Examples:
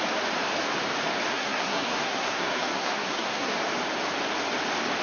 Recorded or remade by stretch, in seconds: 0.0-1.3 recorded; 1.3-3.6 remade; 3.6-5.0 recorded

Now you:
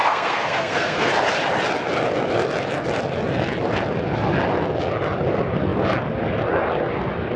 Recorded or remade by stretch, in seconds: 0.0-1.1 remade; 1.1-7.4 recorded

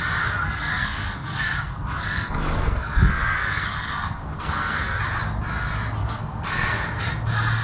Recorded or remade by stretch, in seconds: 0.0-0.4 recorded; 0.4-5.0 remade; 5.0-6.0 recorded; 6.0-7.1 remade; 7.1-7.6 recorded

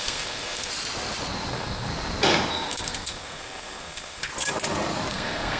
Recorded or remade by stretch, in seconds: 0.0-0.7 remade; 0.7-1.5 recorded; 1.5-1.9 remade; 1.9-2.5 recorded; 2.5-4.3 remade; 4.3-5.1 recorded; 5.1-5.6 remade

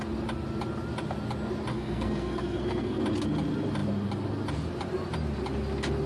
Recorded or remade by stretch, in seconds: 0.0-1.7 recorded; 1.7-3.0 remade; 3.0-6.1 recorded

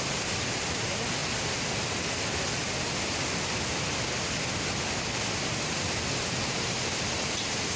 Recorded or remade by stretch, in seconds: 0.0-7.8 recorded

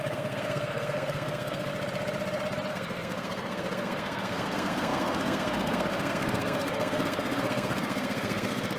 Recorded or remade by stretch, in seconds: 0.0-1.7 remade; 1.7-2.7 recorded; 2.7-8.8 remade

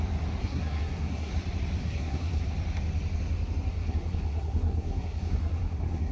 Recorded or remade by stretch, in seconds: 0.0-0.4 recorded; 0.4-1.3 remade; 1.3-1.8 recorded; 1.8-2.4 remade; 2.4-3.7 recorded; 3.7-6.1 remade